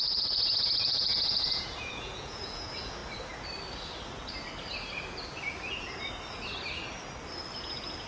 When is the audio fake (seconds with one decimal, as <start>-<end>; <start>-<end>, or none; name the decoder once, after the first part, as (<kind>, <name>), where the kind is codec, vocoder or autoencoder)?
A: 0.0-3.0 (vocoder, Vocos); 7.6-8.1